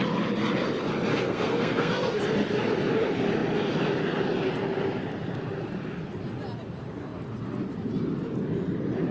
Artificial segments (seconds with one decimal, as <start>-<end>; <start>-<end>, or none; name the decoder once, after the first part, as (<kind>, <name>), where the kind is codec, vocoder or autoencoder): 1.1-2.2 (codec, SNAC)